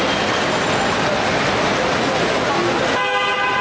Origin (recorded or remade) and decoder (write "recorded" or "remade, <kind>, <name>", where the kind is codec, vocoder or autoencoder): recorded